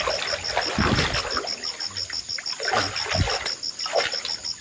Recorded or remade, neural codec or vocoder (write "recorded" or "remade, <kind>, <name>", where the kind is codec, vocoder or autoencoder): recorded